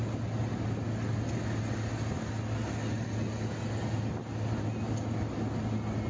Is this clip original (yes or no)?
yes